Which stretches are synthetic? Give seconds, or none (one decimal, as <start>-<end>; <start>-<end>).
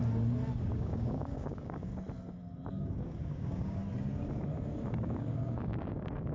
0.6-1.9; 2.7-3.8; 4.8-6.3